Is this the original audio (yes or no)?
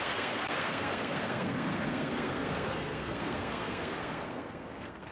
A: no